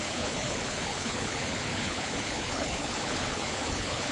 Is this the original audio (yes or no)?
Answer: no